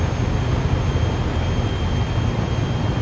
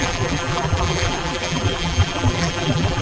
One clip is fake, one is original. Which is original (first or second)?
first